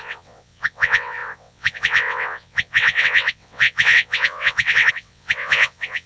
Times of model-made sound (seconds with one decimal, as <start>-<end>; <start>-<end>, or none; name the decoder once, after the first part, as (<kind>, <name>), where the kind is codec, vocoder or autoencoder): 0.0-6.1 (vocoder, WaveNeXt)